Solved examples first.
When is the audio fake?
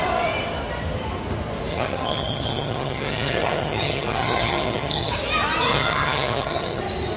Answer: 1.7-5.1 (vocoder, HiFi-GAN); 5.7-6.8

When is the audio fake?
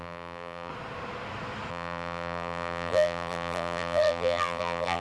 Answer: 0.0-0.7 (vocoder, BigVGAN v2); 1.7-5.0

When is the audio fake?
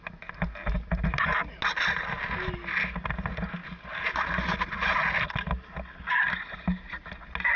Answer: none